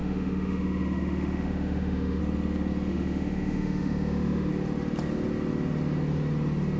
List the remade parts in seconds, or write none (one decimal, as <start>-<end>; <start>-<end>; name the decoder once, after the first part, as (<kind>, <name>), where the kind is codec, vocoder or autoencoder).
0.0-2.2 (autoencoder, DAC-VAE); 2.9-4.5